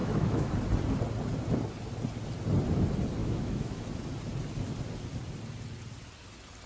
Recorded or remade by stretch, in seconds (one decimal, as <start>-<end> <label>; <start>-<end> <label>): 0.0-0.5 remade; 0.5-3.2 recorded; 3.2-3.8 remade; 3.8-6.7 recorded